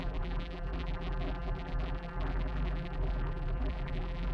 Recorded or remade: remade